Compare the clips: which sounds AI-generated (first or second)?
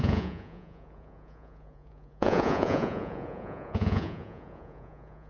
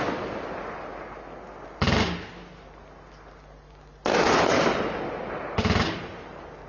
first